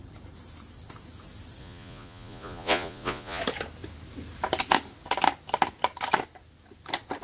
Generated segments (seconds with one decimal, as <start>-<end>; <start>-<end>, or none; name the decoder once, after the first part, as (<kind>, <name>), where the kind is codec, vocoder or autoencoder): 1.6-3.4 (vocoder, Vocos)